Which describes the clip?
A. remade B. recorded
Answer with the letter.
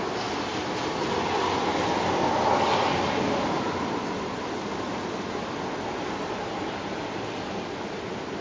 B